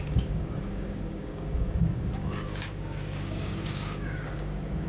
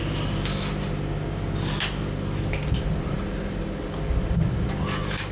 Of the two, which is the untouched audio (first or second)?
second